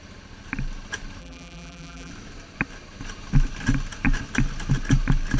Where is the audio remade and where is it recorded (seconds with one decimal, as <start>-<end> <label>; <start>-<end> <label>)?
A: 0.0-1.2 recorded; 1.2-2.1 remade; 2.1-5.4 recorded

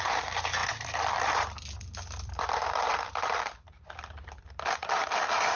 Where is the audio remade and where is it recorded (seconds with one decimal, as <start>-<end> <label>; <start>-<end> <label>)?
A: 0.0-0.6 recorded; 0.6-3.8 remade; 3.8-5.6 recorded